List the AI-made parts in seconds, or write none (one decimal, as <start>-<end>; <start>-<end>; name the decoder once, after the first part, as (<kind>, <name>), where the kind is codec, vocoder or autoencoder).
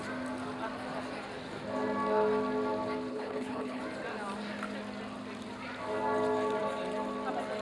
3.1-3.8 (codec, HILCodec)